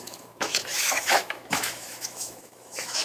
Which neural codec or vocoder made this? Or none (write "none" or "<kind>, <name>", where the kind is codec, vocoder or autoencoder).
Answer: autoencoder, DAC-VAE